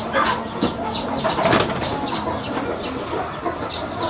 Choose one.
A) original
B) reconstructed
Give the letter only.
A